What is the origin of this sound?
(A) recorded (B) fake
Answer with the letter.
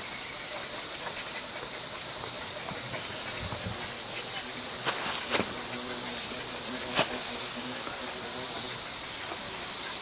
A